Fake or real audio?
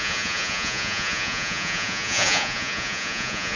fake